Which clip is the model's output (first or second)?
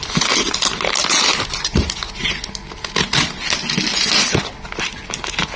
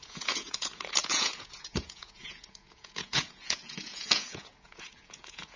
second